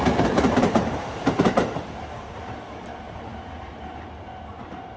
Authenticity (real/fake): fake